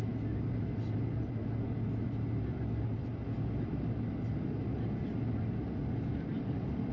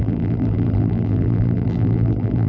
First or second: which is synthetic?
second